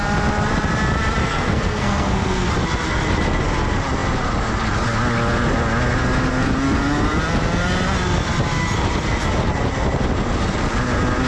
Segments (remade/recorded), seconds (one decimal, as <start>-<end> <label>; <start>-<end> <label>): 0.0-1.2 recorded; 1.2-2.5 remade; 2.5-11.3 recorded